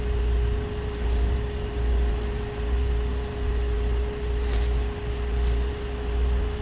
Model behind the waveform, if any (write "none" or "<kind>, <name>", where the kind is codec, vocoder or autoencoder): none